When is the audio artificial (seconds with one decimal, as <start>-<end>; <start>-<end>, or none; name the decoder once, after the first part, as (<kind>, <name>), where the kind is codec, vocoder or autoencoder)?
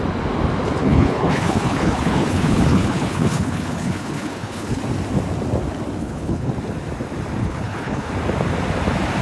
0.8-4.8 (codec, HILCodec); 6.0-6.5; 7.4-8.1